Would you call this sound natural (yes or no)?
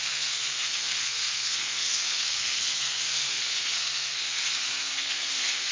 no